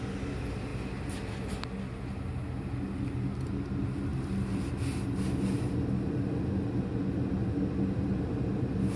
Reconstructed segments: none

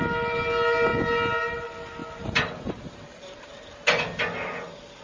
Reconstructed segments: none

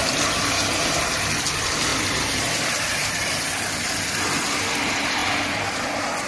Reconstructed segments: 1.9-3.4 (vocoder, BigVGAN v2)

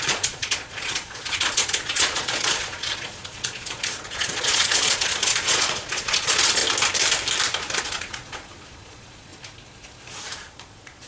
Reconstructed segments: 0.0-6.6 (vocoder, Vocos); 7.8-9.3; 10.4-11.1

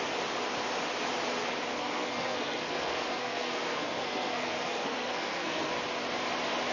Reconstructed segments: 1.7-5.7 (codec, SNAC)